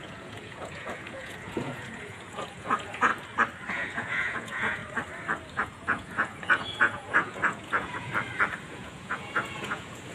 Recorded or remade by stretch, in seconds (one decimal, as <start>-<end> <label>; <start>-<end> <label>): 0.0-3.1 remade; 3.1-3.7 recorded; 3.7-4.8 remade; 4.8-5.5 recorded; 5.5-8.1 remade; 8.1-8.6 recorded; 8.6-10.1 remade